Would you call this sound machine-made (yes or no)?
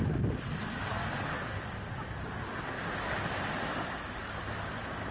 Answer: no